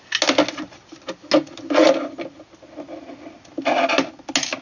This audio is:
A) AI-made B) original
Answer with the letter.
B